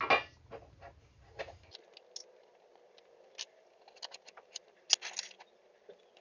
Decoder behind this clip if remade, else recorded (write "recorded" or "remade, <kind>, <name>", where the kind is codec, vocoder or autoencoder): recorded